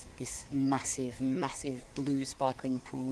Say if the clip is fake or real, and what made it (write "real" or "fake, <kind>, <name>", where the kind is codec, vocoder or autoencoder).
fake, codec, SNAC